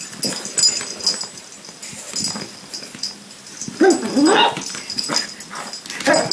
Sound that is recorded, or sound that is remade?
recorded